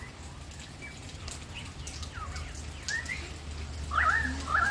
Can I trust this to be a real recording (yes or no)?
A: yes